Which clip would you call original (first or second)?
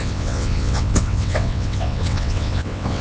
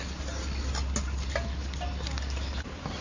second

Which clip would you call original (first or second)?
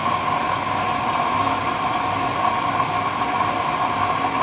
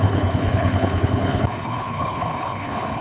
first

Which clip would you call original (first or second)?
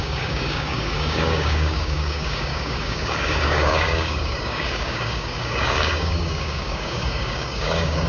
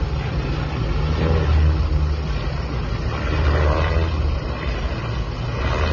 second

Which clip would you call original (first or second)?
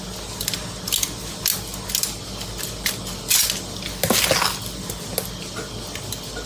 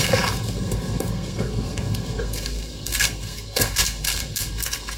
first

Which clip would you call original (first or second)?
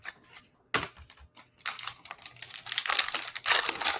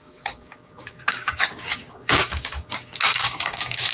first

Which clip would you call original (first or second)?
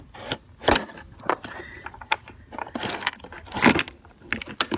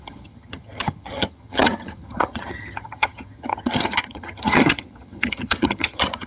first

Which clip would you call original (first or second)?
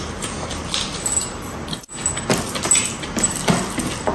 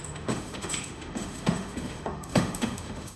first